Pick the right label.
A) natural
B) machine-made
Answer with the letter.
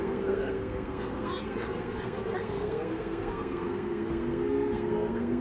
B